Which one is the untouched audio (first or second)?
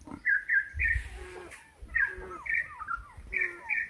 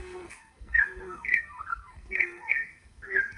first